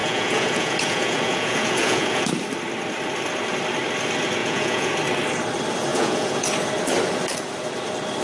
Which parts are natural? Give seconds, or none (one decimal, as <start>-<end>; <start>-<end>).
2.3-4.4; 4.9-5.9; 6.5-8.2